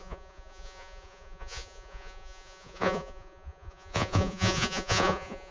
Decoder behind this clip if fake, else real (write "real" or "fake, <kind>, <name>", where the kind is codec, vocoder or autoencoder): fake, vocoder, Vocos